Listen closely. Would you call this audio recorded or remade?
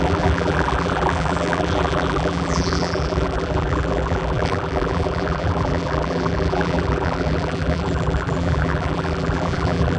remade